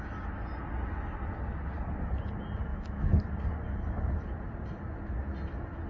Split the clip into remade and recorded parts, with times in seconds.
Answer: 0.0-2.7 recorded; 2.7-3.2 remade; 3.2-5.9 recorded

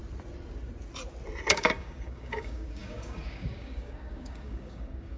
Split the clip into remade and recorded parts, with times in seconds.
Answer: 0.0-1.5 recorded; 1.5-5.2 remade